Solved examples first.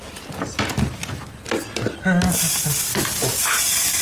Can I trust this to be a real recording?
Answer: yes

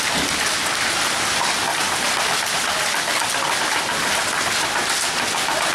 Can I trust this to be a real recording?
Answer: yes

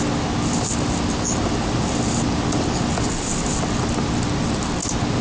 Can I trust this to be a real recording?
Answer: yes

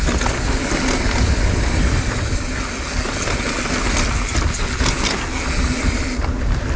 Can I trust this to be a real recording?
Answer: yes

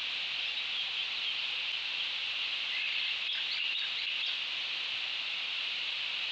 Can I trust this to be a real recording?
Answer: yes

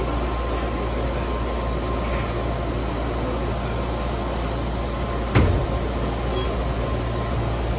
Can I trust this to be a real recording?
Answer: yes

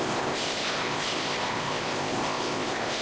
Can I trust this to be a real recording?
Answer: no